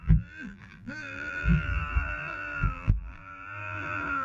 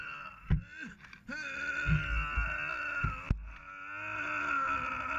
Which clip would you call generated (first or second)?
first